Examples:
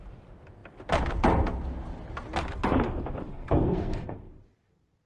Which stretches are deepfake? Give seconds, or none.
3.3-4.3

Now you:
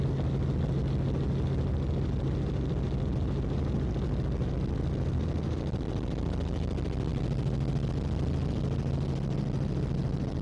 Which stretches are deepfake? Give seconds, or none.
none

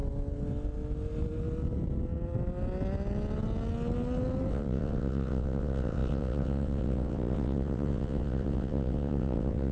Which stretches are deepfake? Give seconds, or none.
4.5-9.7

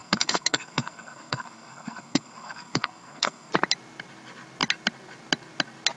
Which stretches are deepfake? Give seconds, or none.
0.0-3.5